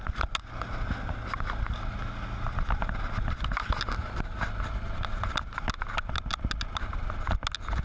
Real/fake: real